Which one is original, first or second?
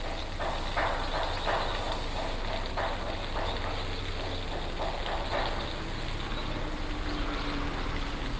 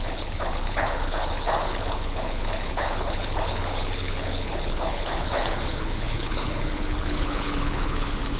first